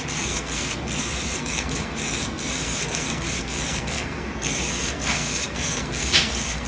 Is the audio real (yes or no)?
no